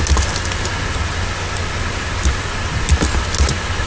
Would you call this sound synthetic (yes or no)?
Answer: no